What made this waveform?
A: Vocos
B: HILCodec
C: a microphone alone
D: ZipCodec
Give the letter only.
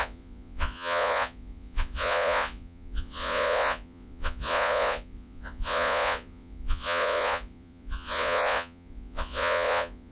A